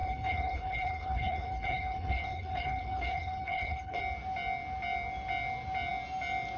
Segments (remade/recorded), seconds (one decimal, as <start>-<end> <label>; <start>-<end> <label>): 0.0-4.0 remade; 4.0-6.6 recorded